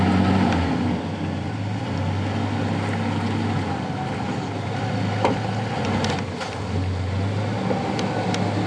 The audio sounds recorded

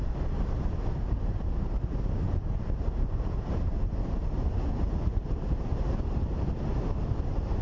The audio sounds remade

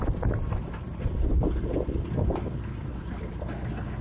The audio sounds remade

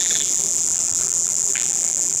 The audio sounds remade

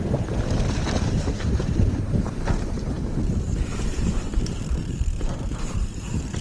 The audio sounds remade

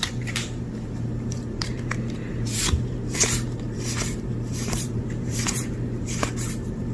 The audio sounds remade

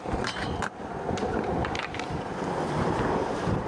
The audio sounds remade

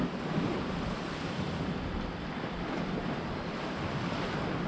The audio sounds recorded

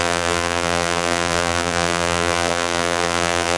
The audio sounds remade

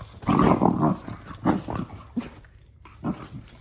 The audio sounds recorded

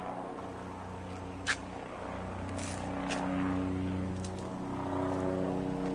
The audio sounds recorded